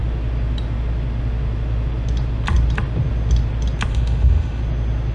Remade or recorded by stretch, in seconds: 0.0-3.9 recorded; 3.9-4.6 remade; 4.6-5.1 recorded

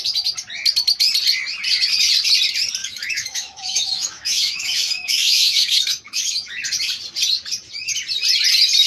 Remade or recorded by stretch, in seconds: 0.0-2.8 recorded; 2.8-6.6 remade; 6.6-8.9 recorded

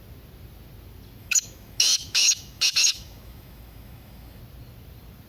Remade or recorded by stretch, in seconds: 0.0-1.2 recorded; 1.2-4.4 remade; 4.4-5.3 recorded